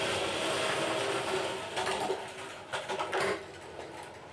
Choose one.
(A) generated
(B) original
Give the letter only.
B